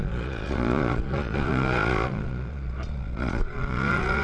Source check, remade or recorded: remade